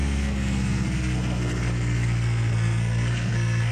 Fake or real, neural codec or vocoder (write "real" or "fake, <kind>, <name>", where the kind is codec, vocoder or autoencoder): fake, codec, SNAC